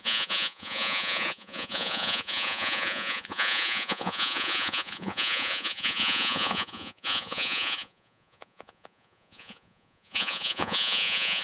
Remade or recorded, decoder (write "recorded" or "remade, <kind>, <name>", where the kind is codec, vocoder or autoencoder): remade, vocoder, Vocos